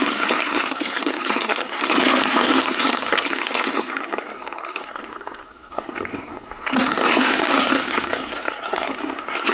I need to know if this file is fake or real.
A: fake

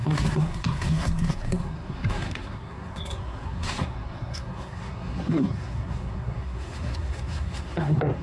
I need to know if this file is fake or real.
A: fake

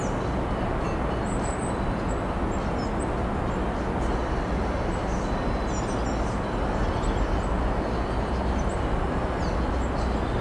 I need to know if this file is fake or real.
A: real